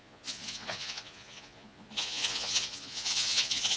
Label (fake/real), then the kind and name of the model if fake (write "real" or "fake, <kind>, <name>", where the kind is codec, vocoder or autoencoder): fake, vocoder, Vocos